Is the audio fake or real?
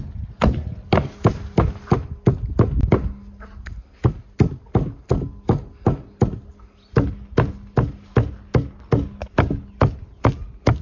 real